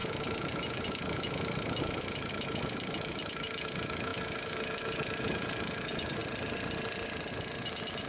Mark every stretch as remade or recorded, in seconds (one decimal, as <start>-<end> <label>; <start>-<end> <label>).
0.0-6.2 remade; 6.2-7.3 recorded; 7.3-8.1 remade